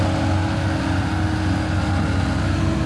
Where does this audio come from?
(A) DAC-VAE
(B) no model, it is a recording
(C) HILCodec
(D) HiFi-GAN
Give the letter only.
B